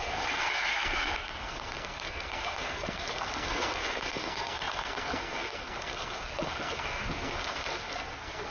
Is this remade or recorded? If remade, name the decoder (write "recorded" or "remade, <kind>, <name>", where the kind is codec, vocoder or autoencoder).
remade, codec, SNAC